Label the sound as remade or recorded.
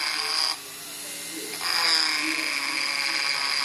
recorded